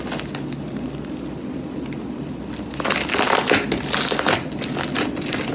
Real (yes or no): yes